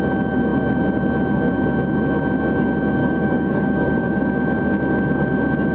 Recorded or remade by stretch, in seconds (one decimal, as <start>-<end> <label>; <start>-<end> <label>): 0.0-3.0 recorded; 3.0-4.2 remade; 4.2-5.7 recorded